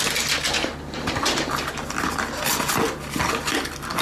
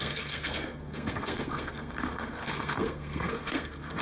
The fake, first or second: second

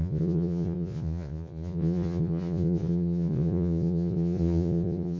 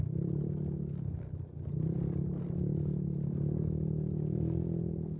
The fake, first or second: first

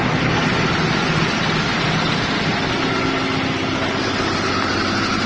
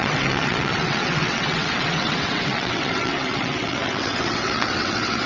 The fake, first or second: second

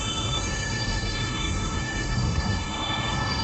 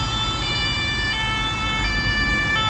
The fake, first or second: first